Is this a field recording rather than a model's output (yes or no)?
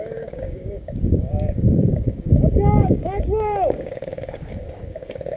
no